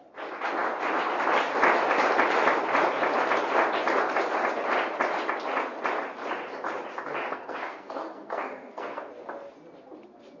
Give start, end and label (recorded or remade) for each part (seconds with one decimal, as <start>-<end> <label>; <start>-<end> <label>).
0.0-7.3 recorded; 7.3-9.1 remade; 9.1-10.4 recorded